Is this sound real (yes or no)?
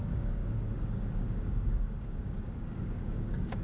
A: no